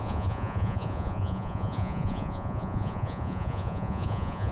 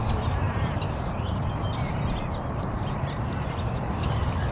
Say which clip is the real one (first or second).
second